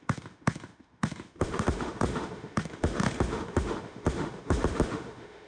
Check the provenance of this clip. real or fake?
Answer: fake